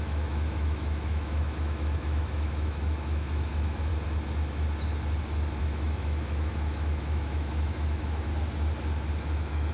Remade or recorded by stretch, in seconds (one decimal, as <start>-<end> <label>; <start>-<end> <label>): 0.0-3.9 remade; 3.9-5.6 recorded; 5.6-8.3 remade; 8.3-9.1 recorded; 9.1-9.7 remade